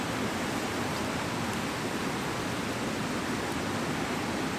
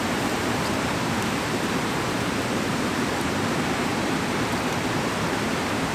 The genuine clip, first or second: first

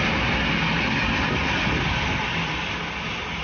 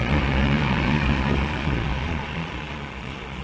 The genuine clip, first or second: first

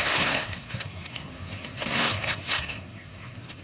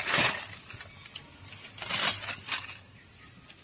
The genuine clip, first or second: second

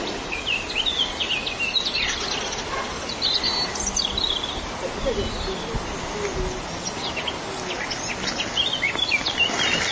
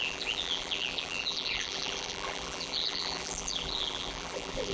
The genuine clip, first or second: first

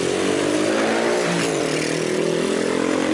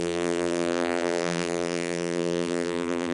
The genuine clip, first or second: first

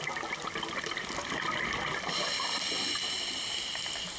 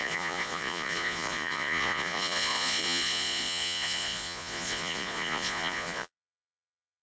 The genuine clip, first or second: first